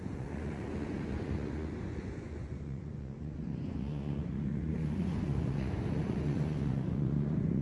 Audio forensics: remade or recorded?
remade